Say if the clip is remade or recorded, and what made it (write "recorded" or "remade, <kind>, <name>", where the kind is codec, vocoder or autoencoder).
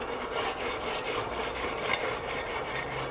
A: recorded